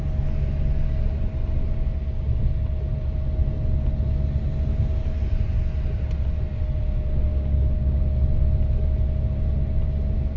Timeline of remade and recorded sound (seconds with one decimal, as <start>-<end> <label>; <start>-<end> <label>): 0.0-7.3 recorded; 7.3-8.0 remade; 8.0-10.4 recorded